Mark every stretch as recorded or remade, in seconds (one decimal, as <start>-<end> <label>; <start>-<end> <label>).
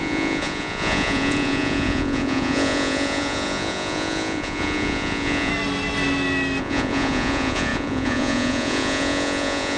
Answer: 0.0-5.5 remade; 5.5-6.6 recorded; 6.6-9.8 remade